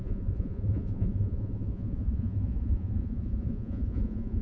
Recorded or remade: remade